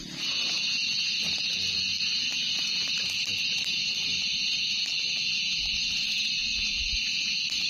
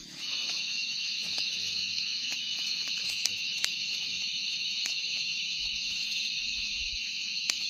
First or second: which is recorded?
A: first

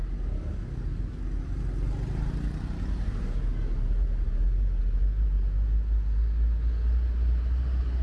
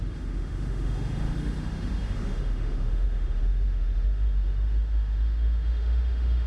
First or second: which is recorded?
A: first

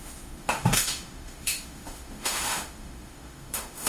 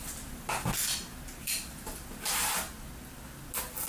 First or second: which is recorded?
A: second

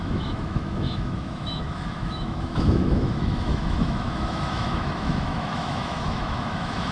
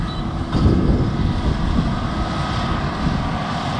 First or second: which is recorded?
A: second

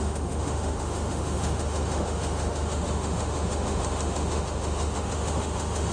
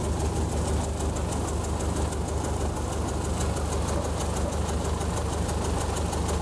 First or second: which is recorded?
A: second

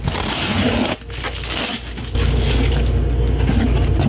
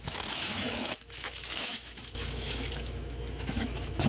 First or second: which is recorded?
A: first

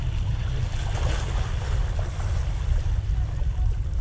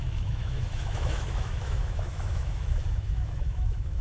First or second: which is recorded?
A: first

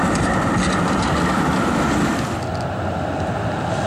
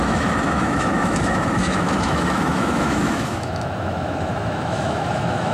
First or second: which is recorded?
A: first